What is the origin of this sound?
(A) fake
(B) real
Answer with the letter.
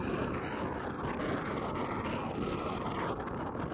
B